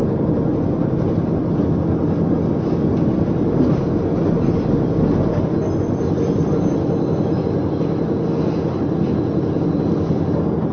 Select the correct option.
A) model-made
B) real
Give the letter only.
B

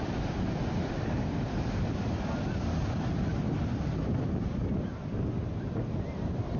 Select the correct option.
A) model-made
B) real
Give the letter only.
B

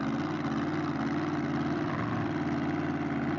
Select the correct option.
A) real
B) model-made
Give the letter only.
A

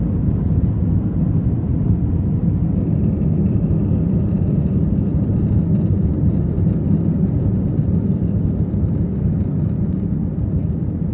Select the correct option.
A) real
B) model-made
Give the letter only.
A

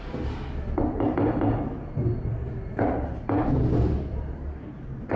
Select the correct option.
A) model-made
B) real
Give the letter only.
B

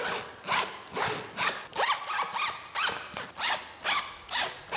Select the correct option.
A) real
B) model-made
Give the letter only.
A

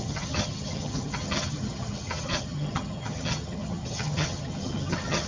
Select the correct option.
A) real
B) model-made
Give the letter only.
B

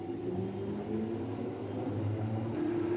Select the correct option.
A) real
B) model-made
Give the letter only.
A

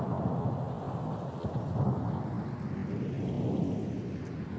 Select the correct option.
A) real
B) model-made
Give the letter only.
A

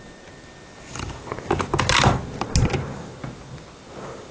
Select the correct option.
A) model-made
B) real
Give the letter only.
B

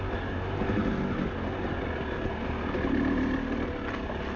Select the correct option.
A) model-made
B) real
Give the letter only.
B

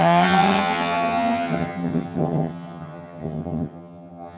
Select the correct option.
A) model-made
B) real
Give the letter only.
A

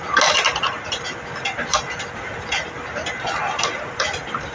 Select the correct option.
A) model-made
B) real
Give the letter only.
B